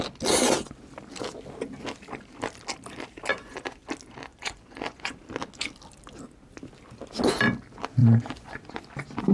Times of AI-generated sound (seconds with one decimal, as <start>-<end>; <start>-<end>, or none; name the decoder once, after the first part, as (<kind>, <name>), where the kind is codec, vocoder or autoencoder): 3.3-3.9 (vocoder, Vocos); 4.3-5.2; 8.0-8.8